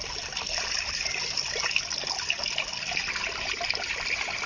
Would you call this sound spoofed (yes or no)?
no